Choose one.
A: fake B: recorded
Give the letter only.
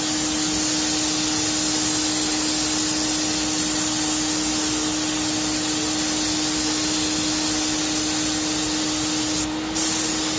B